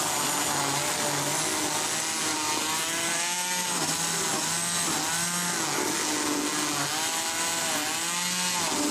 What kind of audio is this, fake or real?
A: real